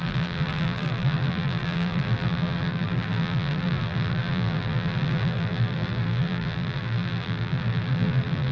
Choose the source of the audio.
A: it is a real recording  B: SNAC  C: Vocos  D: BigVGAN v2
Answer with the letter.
D